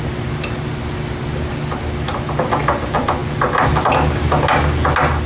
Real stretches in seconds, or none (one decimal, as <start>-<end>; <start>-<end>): 0.0-5.3